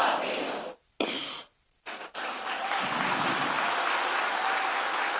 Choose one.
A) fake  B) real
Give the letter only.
B